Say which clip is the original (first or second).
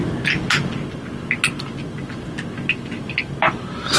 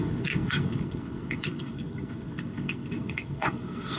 first